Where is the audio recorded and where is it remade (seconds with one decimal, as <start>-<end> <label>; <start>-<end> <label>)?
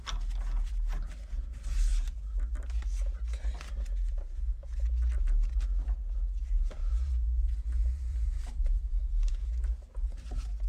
0.0-6.8 recorded; 6.8-9.5 remade; 9.5-10.7 recorded